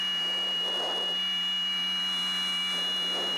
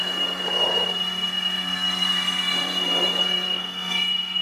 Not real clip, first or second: second